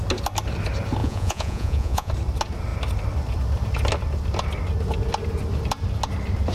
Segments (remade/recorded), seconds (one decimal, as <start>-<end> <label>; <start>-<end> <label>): 0.0-1.0 recorded; 1.0-2.1 remade; 2.1-6.5 recorded